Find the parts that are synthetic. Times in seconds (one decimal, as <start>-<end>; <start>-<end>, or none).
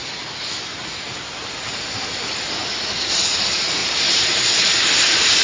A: 0.0-2.2; 3.8-4.7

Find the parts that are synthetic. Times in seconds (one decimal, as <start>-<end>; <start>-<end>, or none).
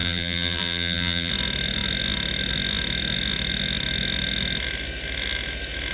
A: 0.0-1.3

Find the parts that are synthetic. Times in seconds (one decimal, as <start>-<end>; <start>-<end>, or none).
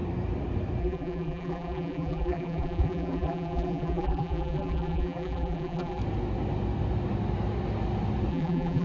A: 0.8-6.0; 8.3-8.8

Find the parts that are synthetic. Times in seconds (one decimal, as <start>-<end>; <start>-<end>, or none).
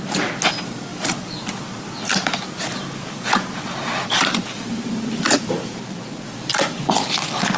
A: 2.2-6.2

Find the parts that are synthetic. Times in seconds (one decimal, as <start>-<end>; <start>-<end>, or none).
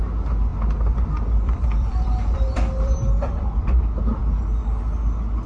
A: 0.5-3.8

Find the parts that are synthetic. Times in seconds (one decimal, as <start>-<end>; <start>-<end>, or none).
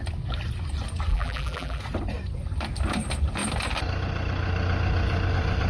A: 1.1-1.8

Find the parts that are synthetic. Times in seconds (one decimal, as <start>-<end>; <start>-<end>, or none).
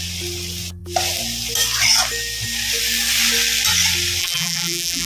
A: 4.2-5.1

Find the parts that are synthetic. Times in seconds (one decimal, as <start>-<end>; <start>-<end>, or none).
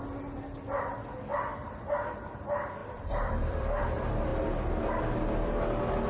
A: 2.8-3.8